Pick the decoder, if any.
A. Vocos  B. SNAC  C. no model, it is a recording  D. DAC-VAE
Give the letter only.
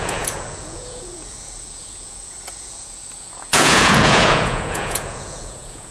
A